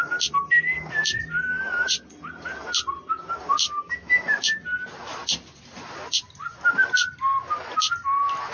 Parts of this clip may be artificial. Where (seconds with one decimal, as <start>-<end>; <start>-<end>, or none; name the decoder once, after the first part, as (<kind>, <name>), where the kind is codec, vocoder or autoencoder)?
3.6-4.4 (autoencoder, DAC-VAE)